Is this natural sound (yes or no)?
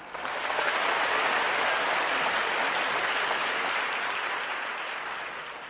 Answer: yes